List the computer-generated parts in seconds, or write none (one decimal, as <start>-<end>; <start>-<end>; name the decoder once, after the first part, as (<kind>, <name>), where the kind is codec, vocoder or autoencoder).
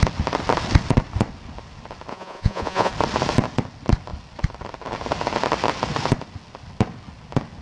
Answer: 2.1-2.9 (vocoder, Vocos)